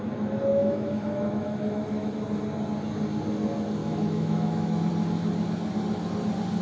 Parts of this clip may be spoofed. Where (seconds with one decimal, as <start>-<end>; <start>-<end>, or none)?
0.5-2.1; 3.8-4.9